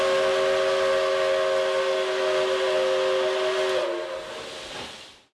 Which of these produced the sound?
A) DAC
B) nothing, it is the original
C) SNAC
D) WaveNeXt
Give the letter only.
B